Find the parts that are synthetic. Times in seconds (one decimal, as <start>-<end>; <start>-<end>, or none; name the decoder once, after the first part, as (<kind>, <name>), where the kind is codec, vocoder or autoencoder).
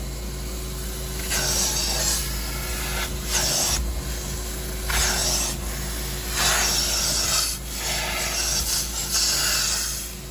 none